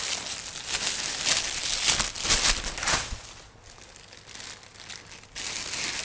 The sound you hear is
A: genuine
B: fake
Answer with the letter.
A